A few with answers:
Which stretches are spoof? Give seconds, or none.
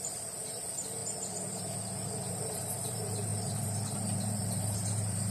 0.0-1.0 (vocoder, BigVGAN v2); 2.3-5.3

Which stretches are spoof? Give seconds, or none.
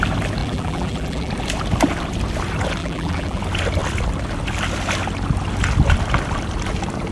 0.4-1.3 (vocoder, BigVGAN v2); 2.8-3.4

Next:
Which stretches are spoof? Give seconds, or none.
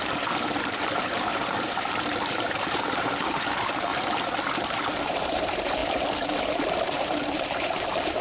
0.0-3.9 (vocoder, BigVGAN v2); 5.0-5.8; 6.4-8.2